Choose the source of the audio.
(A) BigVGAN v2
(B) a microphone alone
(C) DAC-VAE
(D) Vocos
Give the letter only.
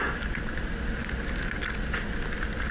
B